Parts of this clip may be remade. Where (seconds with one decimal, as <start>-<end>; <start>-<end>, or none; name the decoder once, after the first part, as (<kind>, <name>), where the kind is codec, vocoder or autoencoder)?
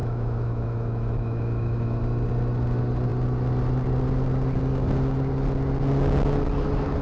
0.0-2.0 (autoencoder, DAC-VAE)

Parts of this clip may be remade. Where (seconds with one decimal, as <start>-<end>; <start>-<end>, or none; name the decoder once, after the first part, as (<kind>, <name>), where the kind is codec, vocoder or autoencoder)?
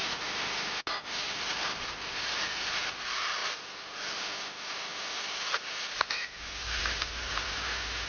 none